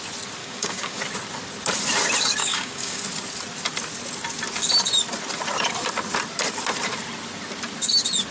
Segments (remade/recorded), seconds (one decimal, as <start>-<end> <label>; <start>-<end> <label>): 0.0-0.4 recorded; 0.4-1.0 remade; 1.0-2.4 recorded; 2.4-3.0 remade; 3.0-8.3 recorded